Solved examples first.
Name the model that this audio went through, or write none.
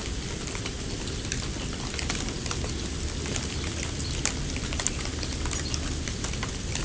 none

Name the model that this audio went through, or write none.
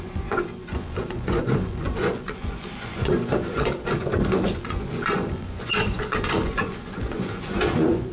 vocoder, Vocos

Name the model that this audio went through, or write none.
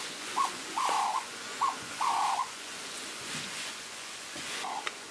vocoder, Vocos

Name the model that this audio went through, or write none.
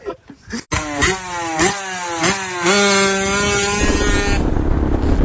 none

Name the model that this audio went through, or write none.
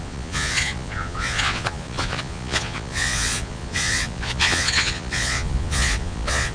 vocoder, Vocos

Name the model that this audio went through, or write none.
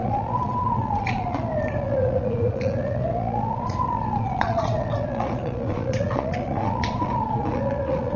vocoder, Vocos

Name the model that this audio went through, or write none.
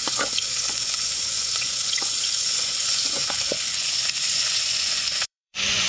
vocoder, Vocos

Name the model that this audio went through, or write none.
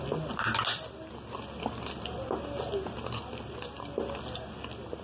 none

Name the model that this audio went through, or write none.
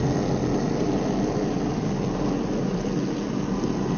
none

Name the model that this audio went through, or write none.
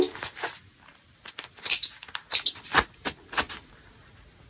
none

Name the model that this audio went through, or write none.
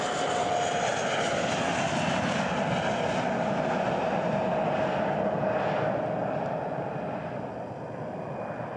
none